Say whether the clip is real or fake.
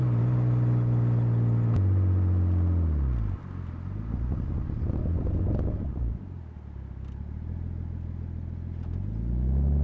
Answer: real